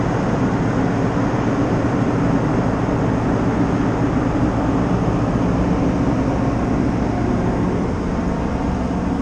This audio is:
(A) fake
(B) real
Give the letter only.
B